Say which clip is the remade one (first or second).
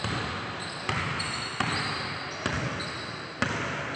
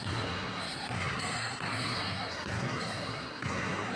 second